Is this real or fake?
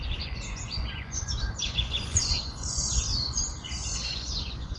fake